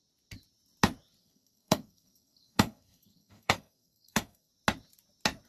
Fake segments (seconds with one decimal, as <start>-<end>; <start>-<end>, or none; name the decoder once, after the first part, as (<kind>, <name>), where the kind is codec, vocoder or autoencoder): 1.2-4.5 (codec, SNAC)